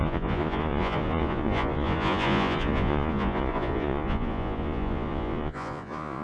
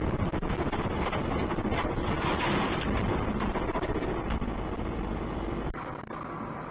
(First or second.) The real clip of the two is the second